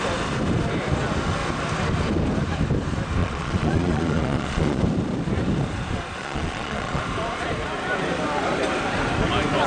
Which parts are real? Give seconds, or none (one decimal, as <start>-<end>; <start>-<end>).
0.0-3.2; 4.8-6.2; 7.0-9.7